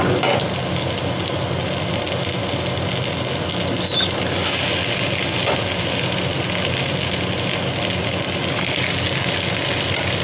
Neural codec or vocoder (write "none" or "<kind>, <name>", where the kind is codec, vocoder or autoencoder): none